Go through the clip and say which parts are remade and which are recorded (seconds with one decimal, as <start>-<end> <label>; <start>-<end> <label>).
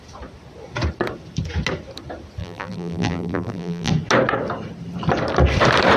0.0-2.4 recorded; 2.4-3.9 remade; 3.9-6.0 recorded